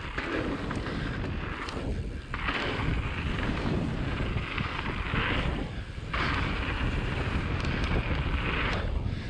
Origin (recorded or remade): recorded